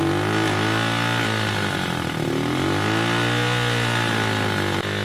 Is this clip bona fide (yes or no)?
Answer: yes